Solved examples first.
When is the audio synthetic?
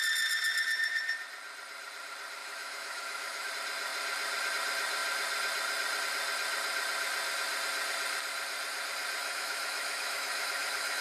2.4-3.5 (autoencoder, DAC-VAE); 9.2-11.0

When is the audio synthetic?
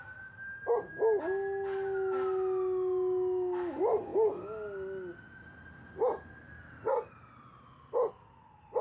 none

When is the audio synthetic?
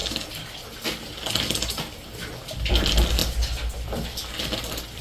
none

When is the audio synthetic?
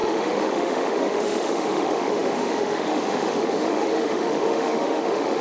0.0-5.4 (autoencoder, DAC-VAE)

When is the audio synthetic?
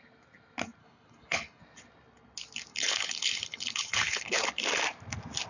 0.8-1.6 (codec, HILCodec); 2.7-4.4